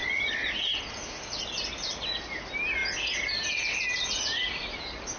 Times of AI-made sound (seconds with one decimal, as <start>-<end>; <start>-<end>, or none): none